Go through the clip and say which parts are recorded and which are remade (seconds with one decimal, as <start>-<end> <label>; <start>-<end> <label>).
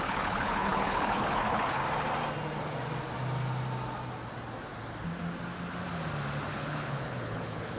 0.0-1.8 remade; 1.8-6.5 recorded; 6.5-7.8 remade